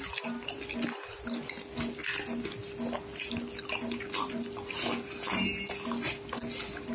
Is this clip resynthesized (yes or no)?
no